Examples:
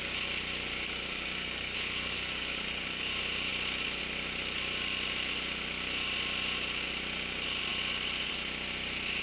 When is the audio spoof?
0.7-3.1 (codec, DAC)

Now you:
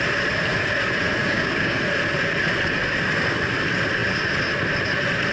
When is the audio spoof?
1.2-1.8 (codec, DAC)

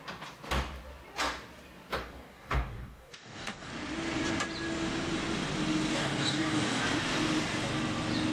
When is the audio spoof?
2.0-3.7 (codec, DAC); 5.9-6.8

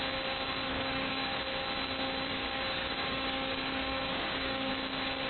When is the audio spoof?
0.7-1.4 (codec, DAC); 2.3-4.7

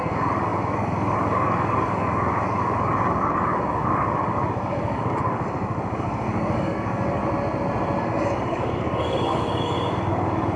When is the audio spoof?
0.0-7.2 (codec, DAC); 8.0-10.6

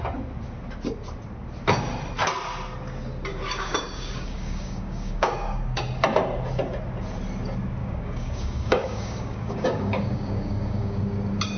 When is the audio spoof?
3.3-5.8 (codec, DAC); 7.8-11.0

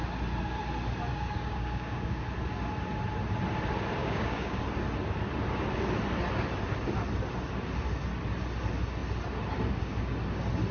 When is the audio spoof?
1.1-2.2 (codec, DAC); 4.0-4.6